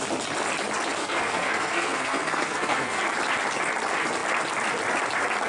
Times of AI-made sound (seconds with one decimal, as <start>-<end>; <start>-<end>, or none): 1.0-3.0